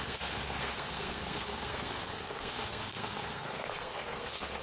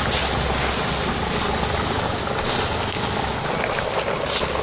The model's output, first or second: first